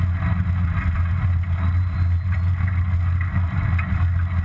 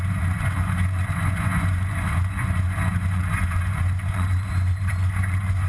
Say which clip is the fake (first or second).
second